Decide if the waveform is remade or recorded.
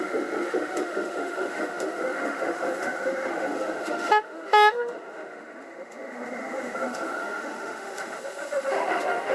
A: remade